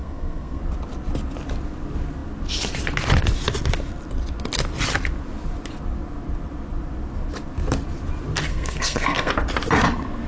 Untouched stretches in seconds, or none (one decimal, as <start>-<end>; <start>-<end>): 0.6-8.5; 9.3-10.3